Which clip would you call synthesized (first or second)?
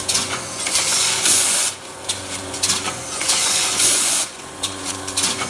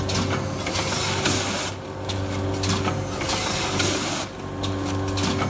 first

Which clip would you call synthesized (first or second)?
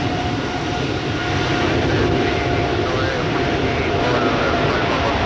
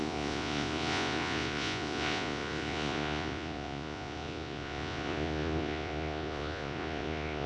second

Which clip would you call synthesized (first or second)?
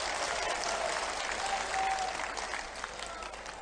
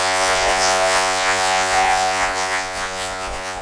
second